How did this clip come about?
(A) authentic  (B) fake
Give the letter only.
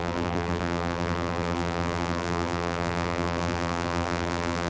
B